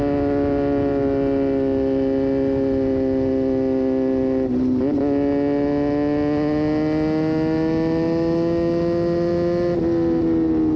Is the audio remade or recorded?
recorded